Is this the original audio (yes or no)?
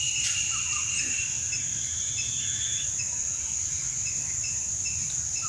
yes